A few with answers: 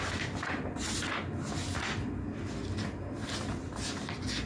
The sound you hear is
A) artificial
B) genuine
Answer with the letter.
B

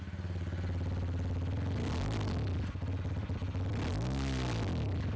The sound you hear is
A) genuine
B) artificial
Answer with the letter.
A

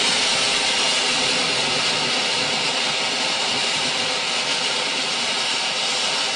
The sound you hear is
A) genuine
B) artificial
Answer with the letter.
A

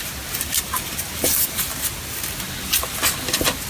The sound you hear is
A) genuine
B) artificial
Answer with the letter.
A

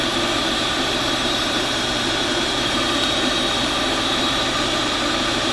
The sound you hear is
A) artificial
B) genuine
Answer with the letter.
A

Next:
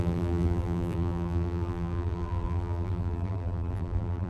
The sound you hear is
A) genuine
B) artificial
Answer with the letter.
B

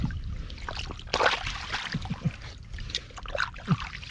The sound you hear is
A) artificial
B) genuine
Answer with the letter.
B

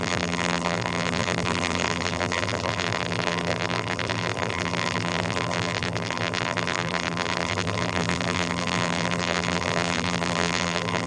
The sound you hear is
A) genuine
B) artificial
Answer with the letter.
B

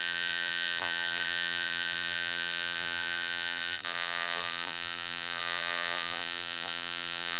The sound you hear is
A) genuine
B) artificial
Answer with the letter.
B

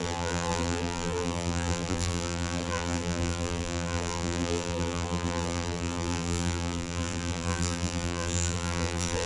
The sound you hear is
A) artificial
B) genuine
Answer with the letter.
A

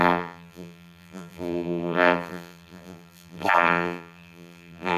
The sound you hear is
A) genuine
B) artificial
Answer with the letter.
B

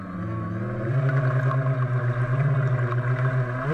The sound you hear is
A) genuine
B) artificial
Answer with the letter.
A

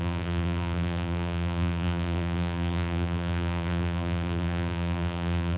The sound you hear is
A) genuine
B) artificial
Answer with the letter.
B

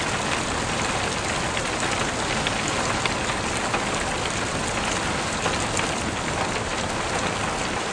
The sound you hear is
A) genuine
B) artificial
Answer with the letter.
A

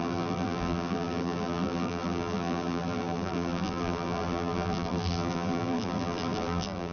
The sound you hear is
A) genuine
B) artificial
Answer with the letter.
B